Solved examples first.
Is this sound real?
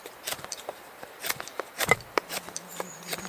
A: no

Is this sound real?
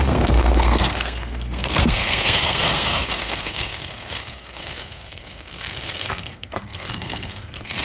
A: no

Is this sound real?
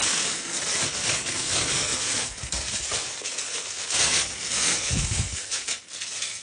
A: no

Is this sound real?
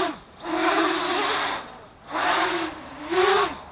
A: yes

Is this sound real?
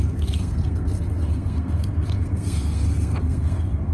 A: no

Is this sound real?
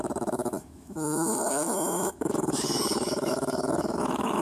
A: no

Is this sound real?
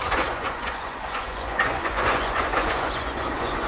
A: no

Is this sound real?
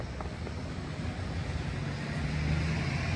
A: yes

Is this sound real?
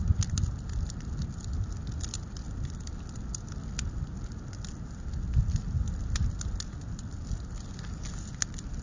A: yes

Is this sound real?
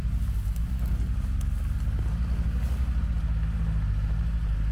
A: yes